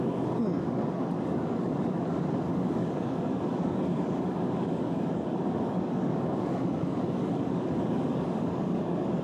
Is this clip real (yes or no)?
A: no